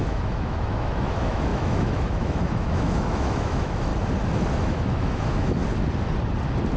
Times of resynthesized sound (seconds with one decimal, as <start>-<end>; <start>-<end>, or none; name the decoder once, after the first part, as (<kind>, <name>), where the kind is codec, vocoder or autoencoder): 0.0-3.9 (autoencoder, DAC-VAE); 4.5-5.6